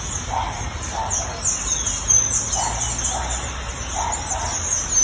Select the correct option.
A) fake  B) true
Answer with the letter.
B